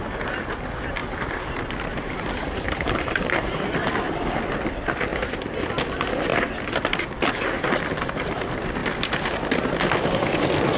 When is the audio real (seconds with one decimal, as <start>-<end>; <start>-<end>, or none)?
0.0-1.0; 4.4-10.8